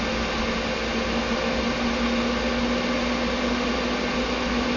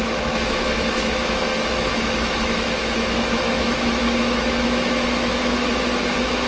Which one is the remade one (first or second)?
second